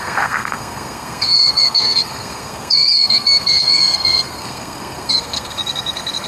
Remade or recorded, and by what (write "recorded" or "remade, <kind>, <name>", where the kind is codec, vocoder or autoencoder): remade, codec, SNAC